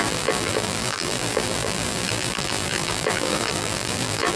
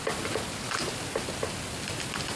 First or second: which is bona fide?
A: second